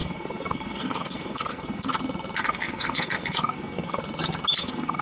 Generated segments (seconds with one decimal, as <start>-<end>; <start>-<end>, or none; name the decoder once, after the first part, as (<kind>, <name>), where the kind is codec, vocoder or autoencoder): 0.0-1.9 (codec, SNAC); 2.4-4.0; 4.6-5.0